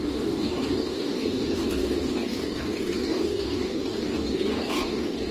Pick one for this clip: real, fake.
fake